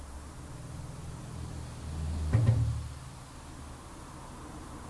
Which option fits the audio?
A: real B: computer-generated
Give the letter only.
A